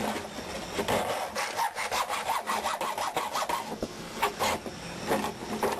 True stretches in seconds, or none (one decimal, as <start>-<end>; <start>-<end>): 0.0-3.7; 4.3-5.8